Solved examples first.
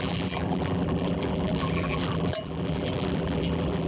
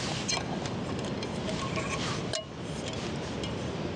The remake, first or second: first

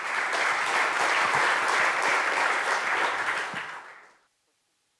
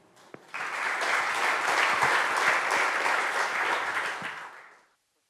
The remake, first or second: first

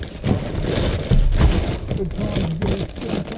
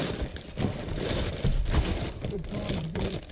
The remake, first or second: second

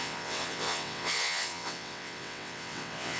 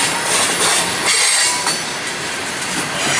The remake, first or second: first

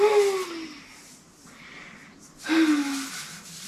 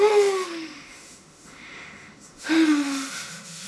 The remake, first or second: second